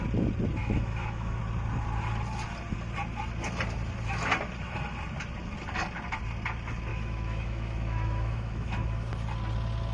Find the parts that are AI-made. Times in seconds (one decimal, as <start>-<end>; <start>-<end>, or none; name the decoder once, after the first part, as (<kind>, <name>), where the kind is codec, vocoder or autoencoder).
0.6-1.4 (autoencoder, DAC-VAE); 6.9-9.1